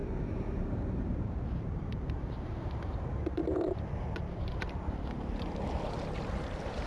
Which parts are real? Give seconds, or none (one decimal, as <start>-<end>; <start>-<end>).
none